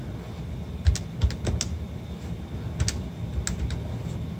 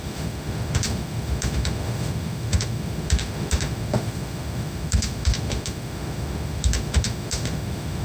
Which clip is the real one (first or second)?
first